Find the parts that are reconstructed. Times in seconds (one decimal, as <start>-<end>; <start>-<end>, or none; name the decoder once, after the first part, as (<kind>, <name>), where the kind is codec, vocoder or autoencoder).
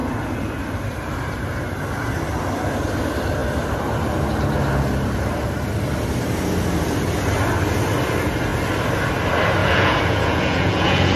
9.6-11.2 (vocoder, Vocos)